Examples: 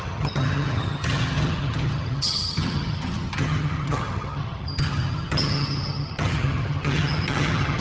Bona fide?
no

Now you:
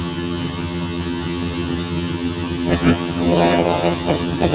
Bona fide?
no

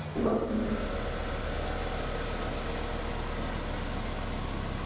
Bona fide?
yes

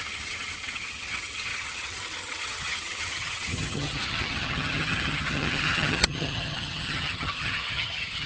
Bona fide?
no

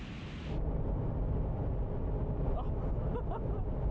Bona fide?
yes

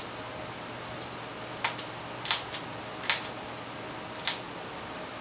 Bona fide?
yes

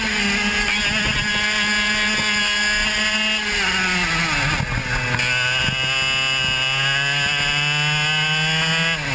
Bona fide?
yes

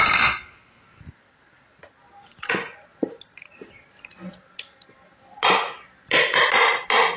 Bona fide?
yes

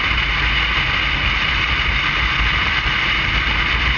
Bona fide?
yes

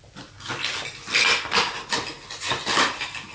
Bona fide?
yes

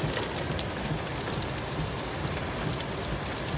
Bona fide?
yes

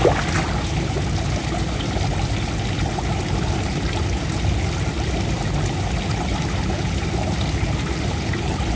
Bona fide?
yes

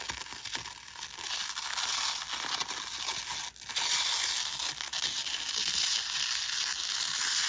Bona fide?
yes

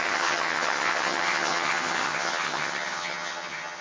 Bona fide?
no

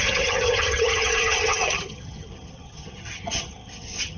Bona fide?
no